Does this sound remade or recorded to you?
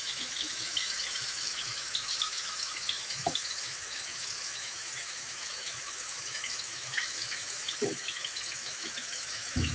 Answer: remade